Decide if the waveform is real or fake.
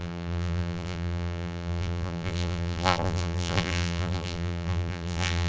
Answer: fake